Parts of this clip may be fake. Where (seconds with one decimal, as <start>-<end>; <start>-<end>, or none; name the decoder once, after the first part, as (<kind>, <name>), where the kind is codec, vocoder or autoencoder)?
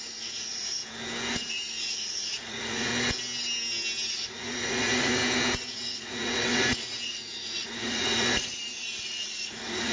0.0-0.8 (vocoder, Vocos); 1.5-2.9; 4.1-5.2; 5.7-9.9